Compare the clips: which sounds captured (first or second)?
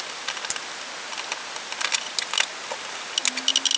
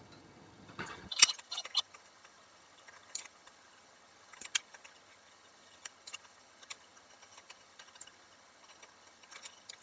first